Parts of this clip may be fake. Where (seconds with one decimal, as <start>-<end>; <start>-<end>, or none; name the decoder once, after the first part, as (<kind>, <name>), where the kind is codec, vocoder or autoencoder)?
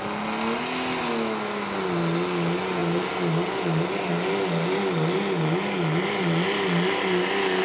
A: none